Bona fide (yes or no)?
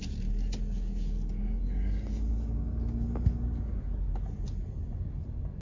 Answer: yes